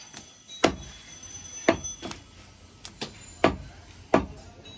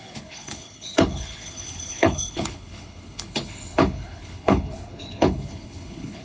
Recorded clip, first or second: first